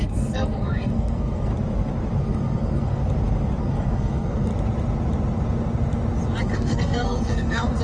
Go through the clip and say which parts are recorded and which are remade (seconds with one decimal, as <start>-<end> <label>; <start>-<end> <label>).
0.0-1.5 remade; 1.5-2.2 recorded; 2.2-3.0 remade; 3.0-3.6 recorded; 3.6-4.5 remade; 4.5-6.4 recorded; 6.4-7.8 remade